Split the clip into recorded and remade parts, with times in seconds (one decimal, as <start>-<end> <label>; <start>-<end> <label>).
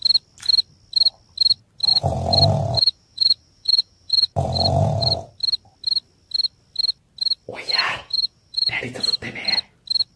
0.0-1.9 recorded; 1.9-5.3 remade; 5.3-7.5 recorded; 7.5-8.8 remade; 8.8-10.2 recorded